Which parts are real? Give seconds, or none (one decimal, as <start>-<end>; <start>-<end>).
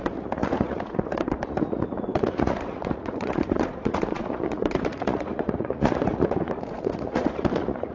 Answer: none